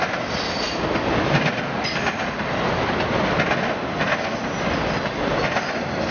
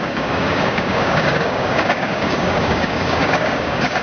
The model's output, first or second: second